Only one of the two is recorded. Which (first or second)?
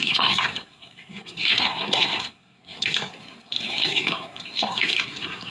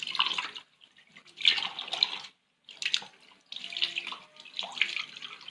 second